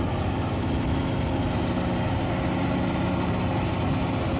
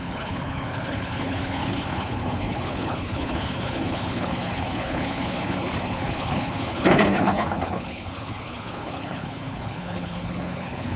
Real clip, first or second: first